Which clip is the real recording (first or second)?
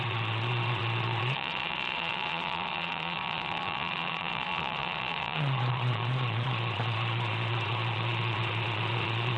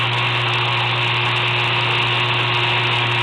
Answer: second